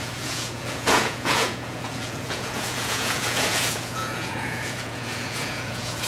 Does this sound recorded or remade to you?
remade